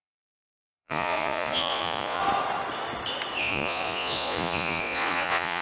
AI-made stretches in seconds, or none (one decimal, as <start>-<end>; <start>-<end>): 0.0-2.2; 3.4-5.6